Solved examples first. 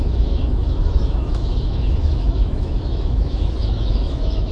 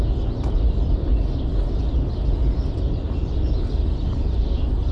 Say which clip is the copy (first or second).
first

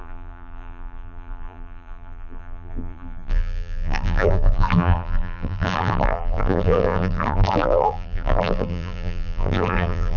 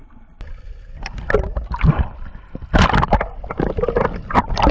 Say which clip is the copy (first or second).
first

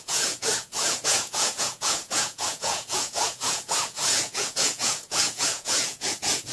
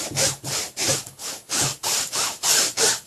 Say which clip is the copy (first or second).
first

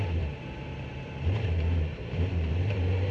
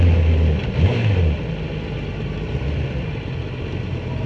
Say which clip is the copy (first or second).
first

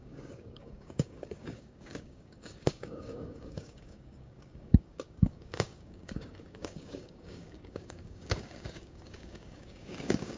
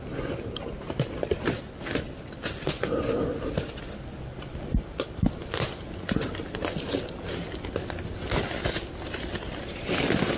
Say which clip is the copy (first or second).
first